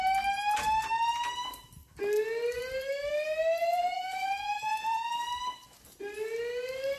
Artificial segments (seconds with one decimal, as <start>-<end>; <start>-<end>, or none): 3.6-5.1

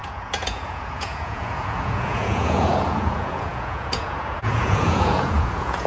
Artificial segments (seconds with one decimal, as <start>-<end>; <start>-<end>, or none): 0.0-5.9

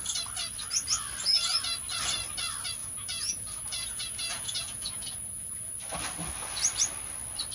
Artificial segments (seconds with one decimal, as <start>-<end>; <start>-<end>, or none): 2.8-5.7

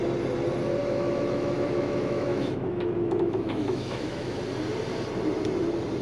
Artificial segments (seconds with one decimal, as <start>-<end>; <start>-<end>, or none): 0.8-4.4

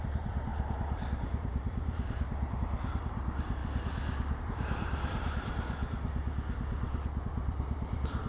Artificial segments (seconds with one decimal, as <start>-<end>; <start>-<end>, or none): 0.0-3.6; 4.4-5.8; 7.2-8.3

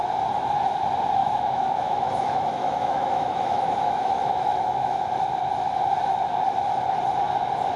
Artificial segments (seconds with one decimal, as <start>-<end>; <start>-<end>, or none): 1.2-5.0

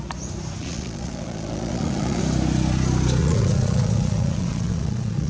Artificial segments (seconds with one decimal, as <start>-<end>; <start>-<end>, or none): 0.6-2.2; 3.2-5.3

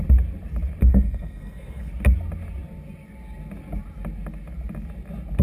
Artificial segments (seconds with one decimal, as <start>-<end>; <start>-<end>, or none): 0.8-1.9